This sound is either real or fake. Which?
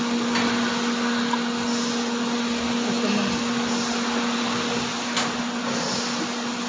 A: real